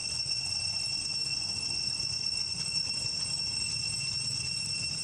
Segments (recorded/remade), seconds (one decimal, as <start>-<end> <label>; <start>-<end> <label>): 0.0-0.6 remade; 0.6-1.3 recorded; 1.3-2.9 remade; 2.9-5.0 recorded